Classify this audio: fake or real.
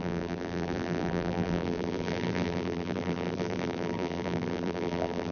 fake